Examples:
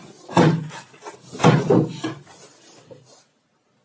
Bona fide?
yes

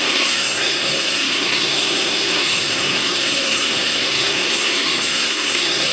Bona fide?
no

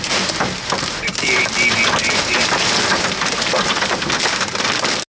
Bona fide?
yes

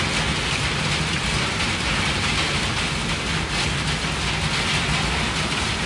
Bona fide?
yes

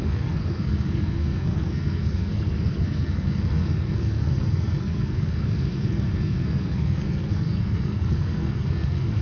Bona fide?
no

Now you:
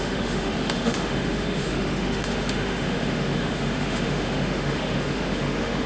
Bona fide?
no